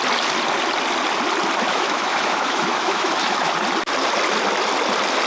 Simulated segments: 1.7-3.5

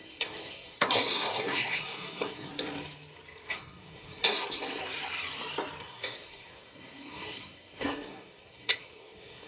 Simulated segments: 0.0-2.5; 3.5-4.8; 5.8-9.5

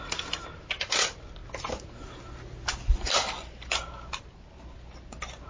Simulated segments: none